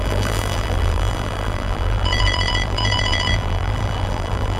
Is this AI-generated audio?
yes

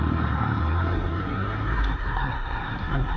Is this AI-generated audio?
yes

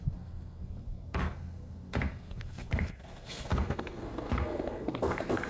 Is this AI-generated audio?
yes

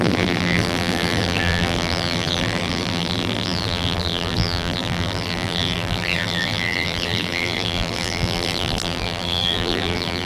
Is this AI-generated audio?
yes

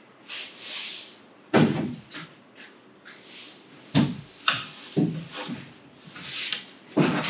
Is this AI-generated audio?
yes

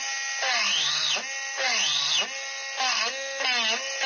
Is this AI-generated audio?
no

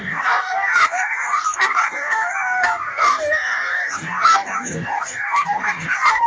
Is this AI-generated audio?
yes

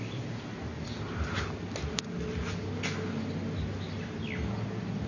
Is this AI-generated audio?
no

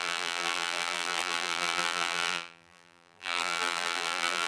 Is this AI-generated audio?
yes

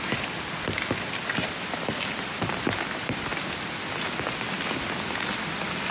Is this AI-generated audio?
no